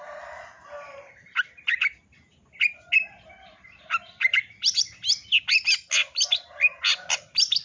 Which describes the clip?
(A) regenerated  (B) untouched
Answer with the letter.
B